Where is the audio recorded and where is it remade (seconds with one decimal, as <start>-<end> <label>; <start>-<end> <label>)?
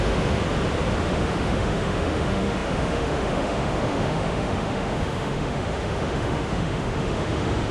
0.0-0.4 remade; 0.4-1.0 recorded; 1.0-7.7 remade